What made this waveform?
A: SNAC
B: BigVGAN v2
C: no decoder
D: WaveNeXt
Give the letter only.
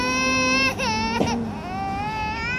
C